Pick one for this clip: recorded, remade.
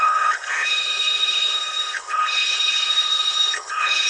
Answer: remade